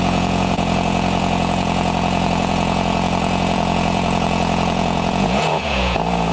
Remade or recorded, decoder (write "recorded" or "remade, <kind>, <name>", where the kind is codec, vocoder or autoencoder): remade, vocoder, Vocos